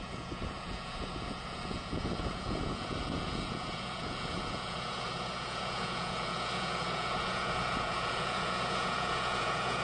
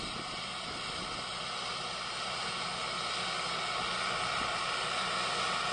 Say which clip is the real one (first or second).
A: second